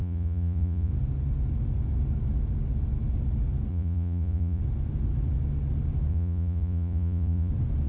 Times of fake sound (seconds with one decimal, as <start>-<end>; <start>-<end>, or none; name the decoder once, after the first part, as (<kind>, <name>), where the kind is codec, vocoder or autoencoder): 0.0-0.9 (vocoder, Vocos); 3.7-4.6; 6.1-7.5